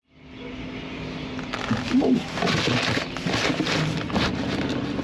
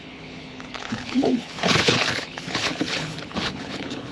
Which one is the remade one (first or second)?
second